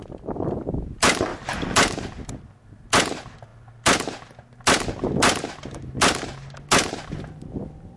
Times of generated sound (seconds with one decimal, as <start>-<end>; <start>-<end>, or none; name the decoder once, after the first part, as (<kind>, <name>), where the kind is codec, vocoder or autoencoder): none